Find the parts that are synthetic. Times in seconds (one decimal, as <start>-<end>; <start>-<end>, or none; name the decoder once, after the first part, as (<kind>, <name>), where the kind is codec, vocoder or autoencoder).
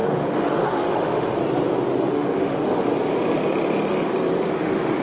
0.0-1.4 (autoencoder, DAC-VAE); 2.1-2.9; 4.5-5.0